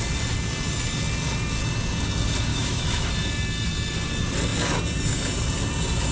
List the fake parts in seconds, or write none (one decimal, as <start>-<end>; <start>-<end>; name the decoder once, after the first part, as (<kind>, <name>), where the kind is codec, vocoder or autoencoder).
2.5-3.1 (autoencoder, DAC-VAE)